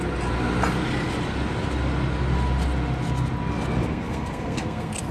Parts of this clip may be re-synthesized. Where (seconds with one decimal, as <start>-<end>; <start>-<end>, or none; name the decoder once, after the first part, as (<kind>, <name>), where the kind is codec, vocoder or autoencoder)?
3.8-5.1 (codec, SNAC)